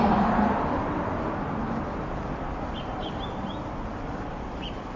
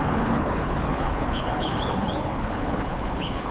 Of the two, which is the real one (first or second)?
first